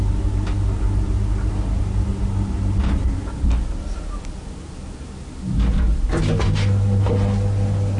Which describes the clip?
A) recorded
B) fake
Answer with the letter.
A